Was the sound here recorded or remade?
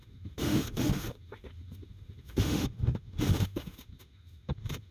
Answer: remade